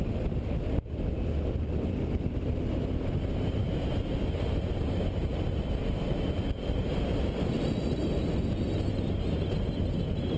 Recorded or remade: recorded